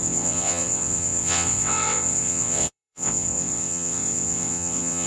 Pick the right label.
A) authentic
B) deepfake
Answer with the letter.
B